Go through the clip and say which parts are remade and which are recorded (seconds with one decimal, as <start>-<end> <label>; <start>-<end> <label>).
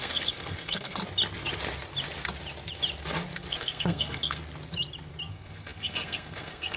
0.0-1.0 remade; 1.0-3.5 recorded; 3.5-4.4 remade; 4.4-5.3 recorded; 5.3-6.8 remade